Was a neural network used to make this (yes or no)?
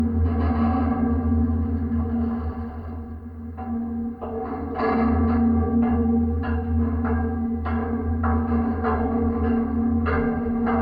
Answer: no